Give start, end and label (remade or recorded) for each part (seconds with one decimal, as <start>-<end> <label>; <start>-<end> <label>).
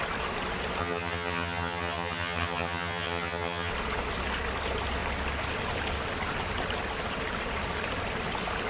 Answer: 0.0-0.8 recorded; 0.8-3.7 remade; 3.7-8.7 recorded